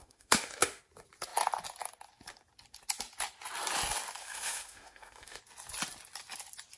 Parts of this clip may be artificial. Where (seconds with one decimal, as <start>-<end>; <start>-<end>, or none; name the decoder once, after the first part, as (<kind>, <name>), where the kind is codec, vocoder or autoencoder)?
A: 0.0-0.8 (autoencoder, DAC-VAE); 4.2-5.4